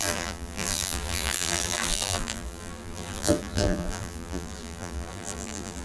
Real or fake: fake